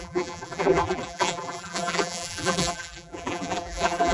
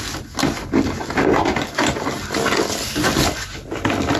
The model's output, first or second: first